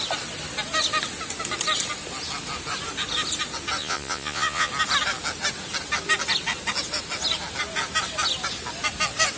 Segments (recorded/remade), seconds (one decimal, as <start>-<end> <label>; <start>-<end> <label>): 0.0-3.8 recorded; 3.8-4.7 remade; 4.7-9.4 recorded